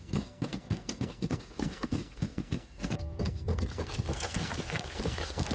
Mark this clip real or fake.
fake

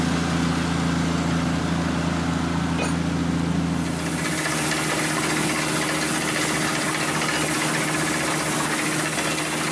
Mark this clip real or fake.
real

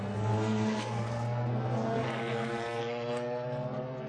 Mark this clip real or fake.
fake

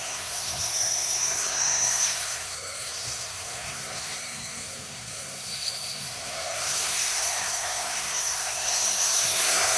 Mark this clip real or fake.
fake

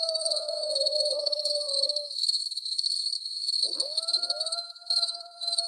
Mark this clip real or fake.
fake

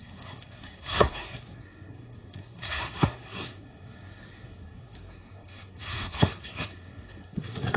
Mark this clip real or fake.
fake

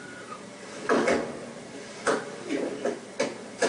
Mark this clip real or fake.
real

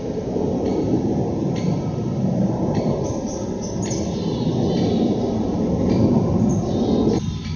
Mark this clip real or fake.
real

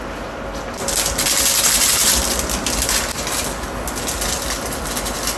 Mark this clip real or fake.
real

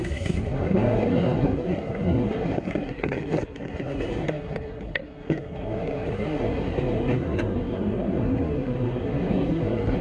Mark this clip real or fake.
fake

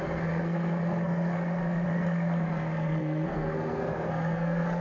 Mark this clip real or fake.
fake